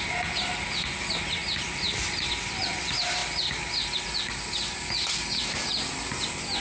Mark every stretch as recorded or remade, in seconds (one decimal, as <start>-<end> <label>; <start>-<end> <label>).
0.0-6.6 recorded